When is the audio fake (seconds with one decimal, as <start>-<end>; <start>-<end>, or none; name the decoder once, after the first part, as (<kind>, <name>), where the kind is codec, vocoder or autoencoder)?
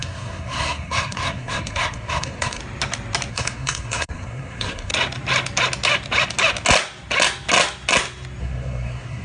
0.0-2.6 (codec, SNAC); 3.3-4.9; 8.4-9.2